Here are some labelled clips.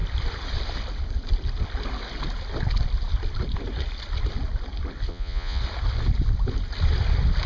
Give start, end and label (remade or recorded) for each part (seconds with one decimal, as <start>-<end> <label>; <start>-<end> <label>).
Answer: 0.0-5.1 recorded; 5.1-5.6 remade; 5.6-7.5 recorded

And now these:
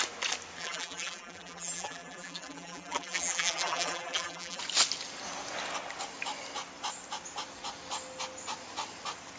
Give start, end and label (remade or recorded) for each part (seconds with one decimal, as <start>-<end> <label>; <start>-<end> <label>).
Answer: 0.0-0.6 recorded; 0.6-4.6 remade; 4.6-9.4 recorded

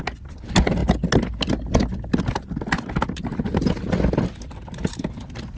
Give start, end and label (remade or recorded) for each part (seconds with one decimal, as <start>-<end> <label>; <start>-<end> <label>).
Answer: 0.0-5.6 recorded

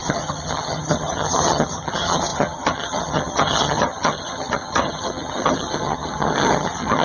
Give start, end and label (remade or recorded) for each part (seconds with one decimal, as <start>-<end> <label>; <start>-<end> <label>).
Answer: 0.0-7.0 remade

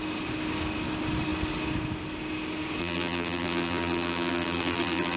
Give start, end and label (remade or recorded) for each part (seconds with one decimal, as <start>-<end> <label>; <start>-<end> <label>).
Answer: 0.0-2.8 recorded; 2.8-5.2 remade

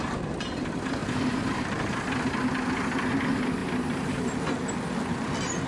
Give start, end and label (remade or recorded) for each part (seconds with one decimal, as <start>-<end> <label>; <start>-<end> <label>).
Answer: 0.0-1.0 recorded; 1.0-2.1 remade; 2.1-3.6 recorded; 3.6-4.3 remade; 4.3-5.7 recorded

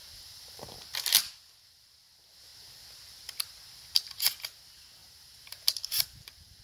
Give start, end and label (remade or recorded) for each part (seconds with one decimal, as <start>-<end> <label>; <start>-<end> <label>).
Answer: 0.0-0.8 remade; 0.8-5.0 recorded; 5.0-6.6 remade

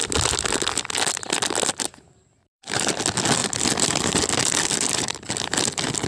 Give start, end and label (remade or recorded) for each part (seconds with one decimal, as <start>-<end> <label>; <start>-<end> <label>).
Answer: 0.0-2.4 recorded; 2.4-3.0 remade; 3.0-6.1 recorded